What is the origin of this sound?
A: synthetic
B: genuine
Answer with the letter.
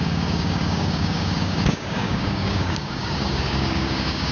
A